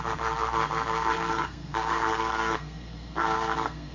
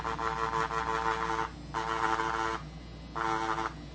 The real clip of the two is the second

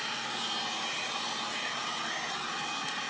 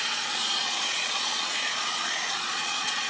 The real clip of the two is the first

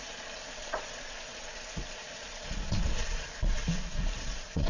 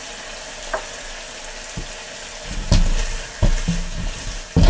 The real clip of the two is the second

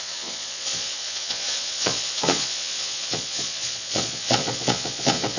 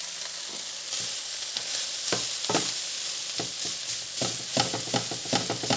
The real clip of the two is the second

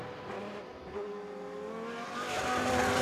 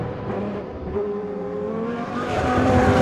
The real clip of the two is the first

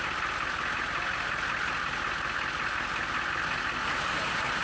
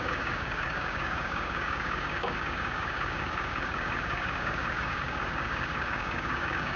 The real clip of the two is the first